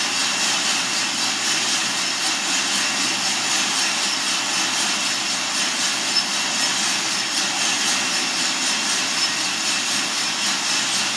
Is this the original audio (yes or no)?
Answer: yes